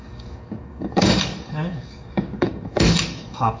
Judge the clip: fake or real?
fake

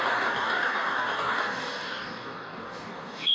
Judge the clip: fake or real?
fake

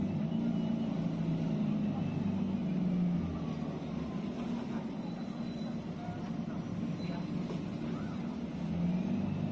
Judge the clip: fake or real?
real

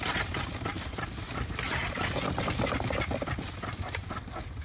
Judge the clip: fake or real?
real